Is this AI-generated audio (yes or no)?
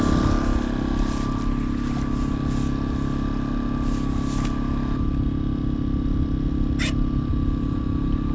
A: no